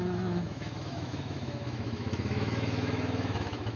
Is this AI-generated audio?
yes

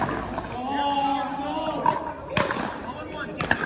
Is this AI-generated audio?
no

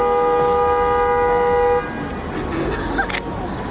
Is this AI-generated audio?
no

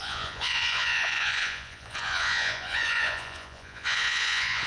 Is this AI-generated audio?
yes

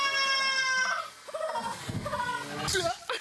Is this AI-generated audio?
no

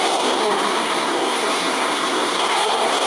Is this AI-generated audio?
yes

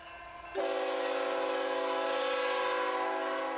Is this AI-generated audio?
no